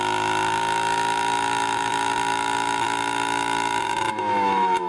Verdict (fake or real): fake